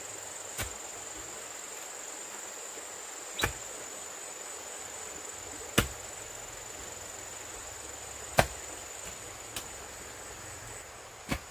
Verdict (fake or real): real